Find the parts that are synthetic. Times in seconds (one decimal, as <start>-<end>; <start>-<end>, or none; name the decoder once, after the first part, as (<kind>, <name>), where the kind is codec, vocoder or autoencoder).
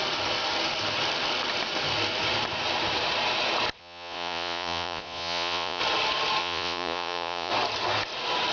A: 3.8-5.8 (vocoder, Vocos); 6.4-7.5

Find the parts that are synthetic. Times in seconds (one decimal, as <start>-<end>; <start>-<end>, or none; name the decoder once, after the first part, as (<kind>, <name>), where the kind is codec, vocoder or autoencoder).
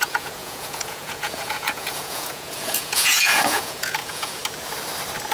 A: 0.0-4.4 (vocoder, Vocos)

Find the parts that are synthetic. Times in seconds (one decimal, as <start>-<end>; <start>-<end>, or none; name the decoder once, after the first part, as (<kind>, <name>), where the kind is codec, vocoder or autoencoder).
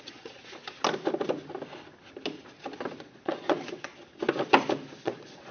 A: 0.0-0.4 (vocoder, Vocos); 3.0-3.9; 5.0-5.5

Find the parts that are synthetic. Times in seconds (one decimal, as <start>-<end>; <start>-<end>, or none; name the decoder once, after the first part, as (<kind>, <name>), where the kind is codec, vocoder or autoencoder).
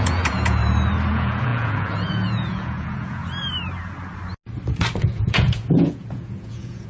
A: 0.0-0.6 (vocoder, Vocos); 1.1-3.2; 5.0-6.9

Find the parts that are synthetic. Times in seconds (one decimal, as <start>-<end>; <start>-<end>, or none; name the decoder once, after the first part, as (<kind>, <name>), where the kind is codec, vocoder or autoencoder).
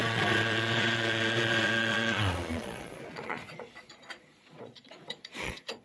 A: 0.0-5.8 (vocoder, Vocos)